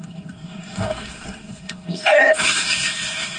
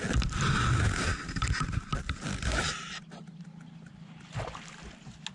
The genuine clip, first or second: second